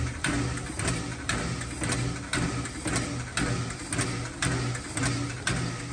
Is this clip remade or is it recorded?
recorded